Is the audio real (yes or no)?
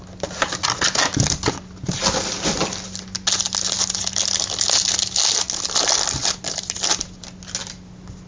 yes